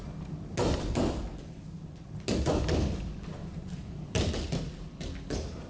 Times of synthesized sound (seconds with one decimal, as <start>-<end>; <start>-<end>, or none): 3.4-4.3

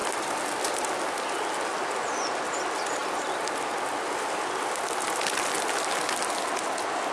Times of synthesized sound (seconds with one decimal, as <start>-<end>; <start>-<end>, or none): none